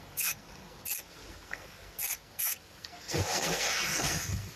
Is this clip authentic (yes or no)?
no